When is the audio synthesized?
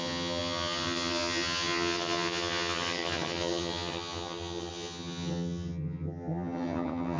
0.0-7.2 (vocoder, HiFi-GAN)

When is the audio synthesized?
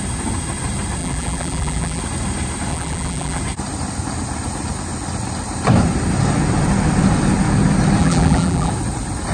1.0-2.0 (vocoder, BigVGAN v2); 2.7-3.4; 8.0-8.7